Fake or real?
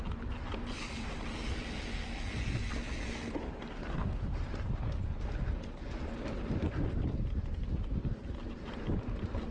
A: real